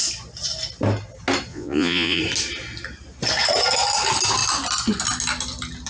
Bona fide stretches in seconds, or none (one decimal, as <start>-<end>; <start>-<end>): 0.0-1.5; 2.2-5.9